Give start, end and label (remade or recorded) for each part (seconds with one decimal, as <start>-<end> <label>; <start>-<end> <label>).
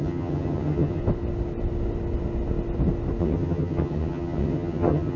0.0-1.0 remade; 1.0-3.2 recorded; 3.2-5.2 remade